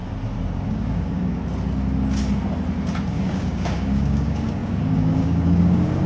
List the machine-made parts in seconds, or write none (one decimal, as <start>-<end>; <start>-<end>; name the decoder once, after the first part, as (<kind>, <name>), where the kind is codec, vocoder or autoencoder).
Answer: 0.7-1.4 (codec, DAC); 3.1-6.1